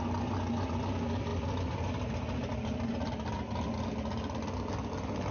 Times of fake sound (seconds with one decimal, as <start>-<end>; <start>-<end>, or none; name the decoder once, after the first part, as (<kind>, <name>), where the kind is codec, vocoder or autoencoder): none

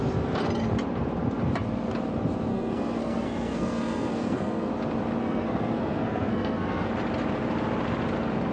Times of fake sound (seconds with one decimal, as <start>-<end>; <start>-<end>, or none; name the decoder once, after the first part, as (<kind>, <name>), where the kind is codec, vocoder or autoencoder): 2.5-4.7 (codec, SNAC); 5.2-6.9